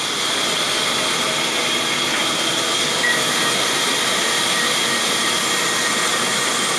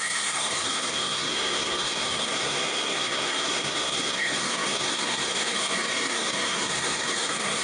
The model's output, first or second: second